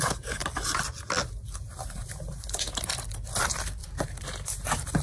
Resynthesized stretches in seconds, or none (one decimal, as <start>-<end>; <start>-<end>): 0.0-0.4; 1.6-2.9; 3.4-5.0